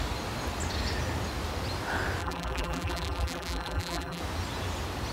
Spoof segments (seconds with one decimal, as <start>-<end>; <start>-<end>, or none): 2.2-4.2